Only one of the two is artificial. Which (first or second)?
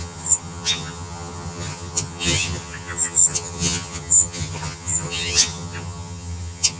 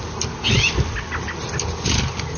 first